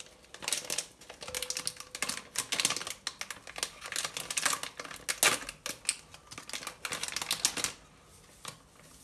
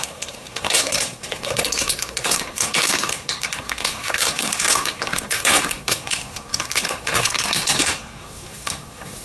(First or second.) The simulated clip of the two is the second